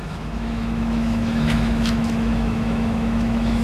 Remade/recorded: remade